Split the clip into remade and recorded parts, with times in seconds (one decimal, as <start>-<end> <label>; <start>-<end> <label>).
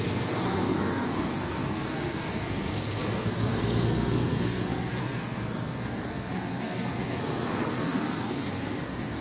0.0-9.2 remade